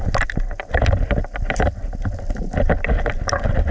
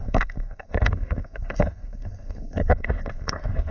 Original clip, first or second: first